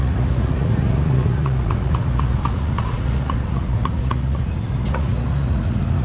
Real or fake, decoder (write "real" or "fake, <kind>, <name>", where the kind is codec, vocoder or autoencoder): fake, vocoder, Vocos